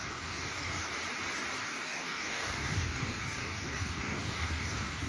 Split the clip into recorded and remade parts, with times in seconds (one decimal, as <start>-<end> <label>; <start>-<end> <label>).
0.0-0.9 remade; 0.9-1.6 recorded; 1.6-5.1 remade